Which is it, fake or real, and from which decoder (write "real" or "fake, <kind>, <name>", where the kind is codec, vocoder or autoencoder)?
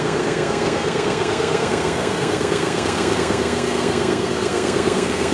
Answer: fake, codec, SNAC